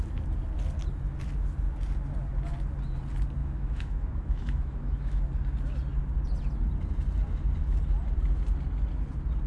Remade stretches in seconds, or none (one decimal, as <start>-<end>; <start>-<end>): 3.4-5.2